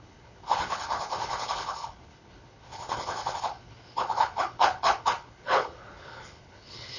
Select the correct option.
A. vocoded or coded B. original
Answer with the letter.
A